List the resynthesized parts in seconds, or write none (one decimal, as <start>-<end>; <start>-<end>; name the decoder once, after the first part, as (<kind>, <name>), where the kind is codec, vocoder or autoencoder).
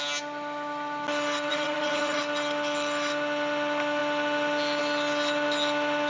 1.5-2.2 (vocoder, Vocos)